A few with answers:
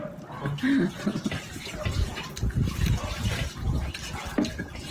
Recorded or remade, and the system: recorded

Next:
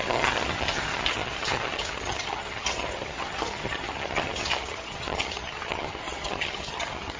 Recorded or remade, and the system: remade, vocoder, HiFi-GAN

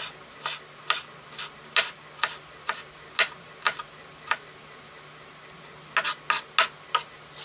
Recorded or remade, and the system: recorded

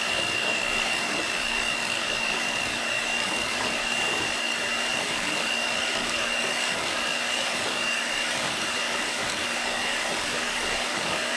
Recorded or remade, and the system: remade, codec, DAC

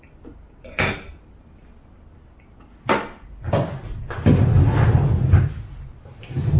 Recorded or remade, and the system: recorded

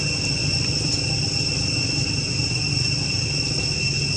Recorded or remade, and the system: recorded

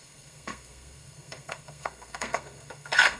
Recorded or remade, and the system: remade, codec, SNAC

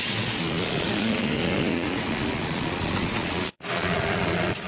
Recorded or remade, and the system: remade, vocoder, Vocos